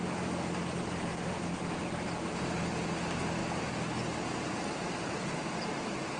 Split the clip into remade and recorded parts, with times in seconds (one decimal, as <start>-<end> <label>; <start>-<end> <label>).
0.0-6.2 recorded